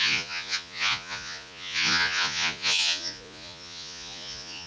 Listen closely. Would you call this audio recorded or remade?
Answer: remade